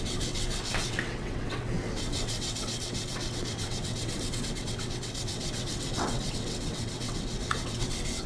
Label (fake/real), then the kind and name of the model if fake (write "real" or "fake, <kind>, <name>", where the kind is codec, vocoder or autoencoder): fake, vocoder, WaveNeXt